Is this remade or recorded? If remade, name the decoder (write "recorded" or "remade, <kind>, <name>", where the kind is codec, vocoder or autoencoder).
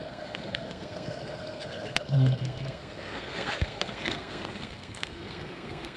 remade, codec, SNAC